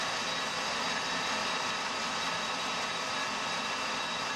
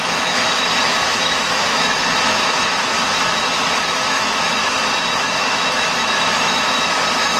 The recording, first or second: first